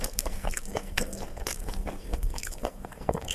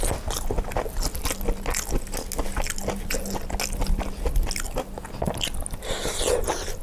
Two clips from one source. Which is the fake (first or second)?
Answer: first